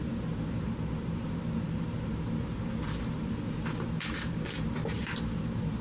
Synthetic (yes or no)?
yes